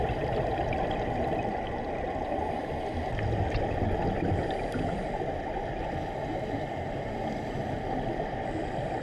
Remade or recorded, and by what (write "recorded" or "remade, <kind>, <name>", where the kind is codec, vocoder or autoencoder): recorded